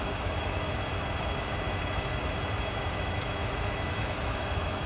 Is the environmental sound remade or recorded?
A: remade